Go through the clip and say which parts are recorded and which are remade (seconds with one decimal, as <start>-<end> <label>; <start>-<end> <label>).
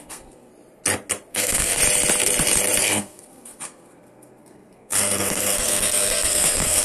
0.0-0.5 remade; 0.5-1.3 recorded; 1.3-1.8 remade; 1.8-2.8 recorded; 2.8-6.8 remade